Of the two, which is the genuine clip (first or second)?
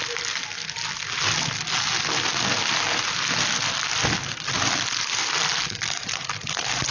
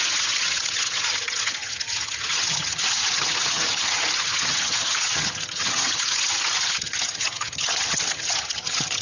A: first